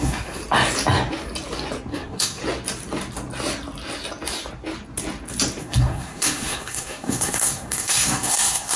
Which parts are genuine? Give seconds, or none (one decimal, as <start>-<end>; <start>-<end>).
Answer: 0.4-1.9; 2.4-5.6